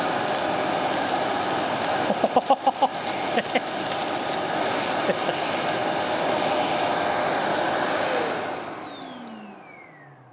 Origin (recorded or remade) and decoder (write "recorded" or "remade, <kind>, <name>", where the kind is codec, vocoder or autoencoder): recorded